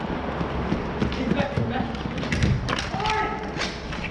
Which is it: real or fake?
real